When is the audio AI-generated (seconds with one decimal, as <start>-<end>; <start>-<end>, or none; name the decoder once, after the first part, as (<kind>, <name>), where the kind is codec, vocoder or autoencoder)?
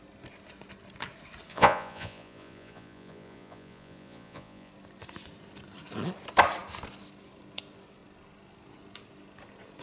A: 1.5-4.7 (vocoder, Vocos)